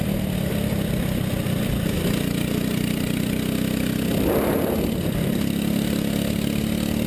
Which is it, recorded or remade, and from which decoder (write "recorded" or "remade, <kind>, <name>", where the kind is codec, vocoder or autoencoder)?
recorded